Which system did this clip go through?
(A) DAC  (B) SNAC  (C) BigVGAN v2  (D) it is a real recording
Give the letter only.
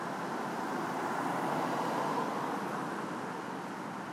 C